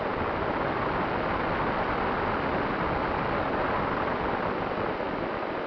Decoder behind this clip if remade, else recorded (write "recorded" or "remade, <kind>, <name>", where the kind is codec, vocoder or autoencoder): recorded